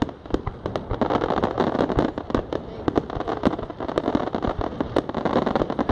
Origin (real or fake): fake